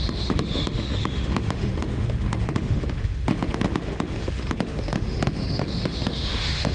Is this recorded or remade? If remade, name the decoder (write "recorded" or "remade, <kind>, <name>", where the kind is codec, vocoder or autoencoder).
remade, autoencoder, DAC-VAE